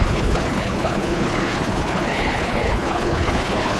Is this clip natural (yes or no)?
no